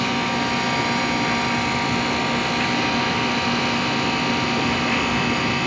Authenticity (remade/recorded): recorded